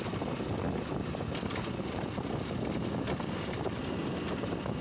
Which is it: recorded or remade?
recorded